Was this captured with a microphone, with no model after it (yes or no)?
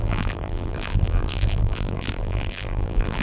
no